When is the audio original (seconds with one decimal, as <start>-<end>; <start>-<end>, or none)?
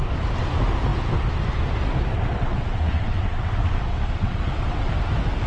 0.0-2.1; 4.9-5.5